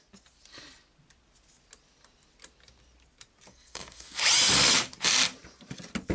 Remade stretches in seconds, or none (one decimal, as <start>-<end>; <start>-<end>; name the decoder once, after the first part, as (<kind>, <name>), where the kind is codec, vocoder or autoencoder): 3.5-4.2 (codec, SNAC)

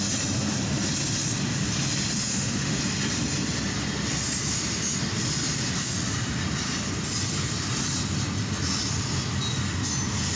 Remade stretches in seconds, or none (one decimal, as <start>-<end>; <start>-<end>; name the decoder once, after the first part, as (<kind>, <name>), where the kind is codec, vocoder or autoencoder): 2.3-2.8 (autoencoder, DAC-VAE)

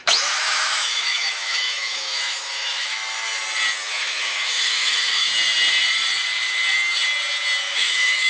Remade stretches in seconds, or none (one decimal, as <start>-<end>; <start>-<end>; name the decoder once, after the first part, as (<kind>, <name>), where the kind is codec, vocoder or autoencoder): 0.0-3.0 (autoencoder, DAC-VAE); 3.9-5.3; 7.6-8.3